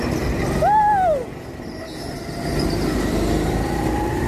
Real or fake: real